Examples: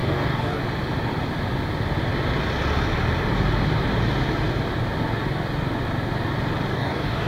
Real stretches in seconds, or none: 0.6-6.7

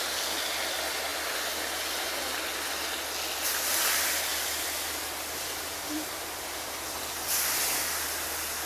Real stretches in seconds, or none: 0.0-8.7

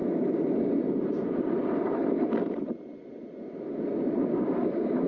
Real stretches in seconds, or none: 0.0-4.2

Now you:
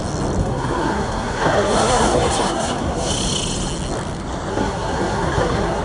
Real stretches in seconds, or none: 0.0-0.4; 3.1-4.5